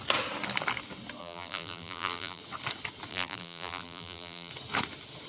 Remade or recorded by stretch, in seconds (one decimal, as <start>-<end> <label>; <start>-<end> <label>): 0.0-1.2 recorded; 1.2-2.4 remade; 2.4-3.1 recorded; 3.1-4.5 remade; 4.5-5.3 recorded